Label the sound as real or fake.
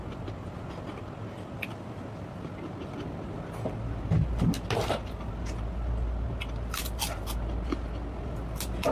real